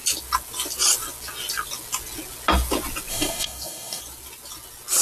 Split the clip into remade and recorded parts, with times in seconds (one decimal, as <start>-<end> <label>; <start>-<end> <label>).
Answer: 0.0-3.1 recorded; 3.1-4.0 remade; 4.0-5.0 recorded